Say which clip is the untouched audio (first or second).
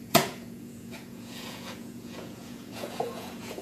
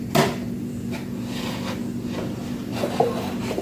second